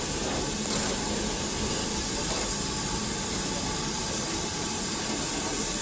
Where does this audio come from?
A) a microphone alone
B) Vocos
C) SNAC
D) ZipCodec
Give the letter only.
A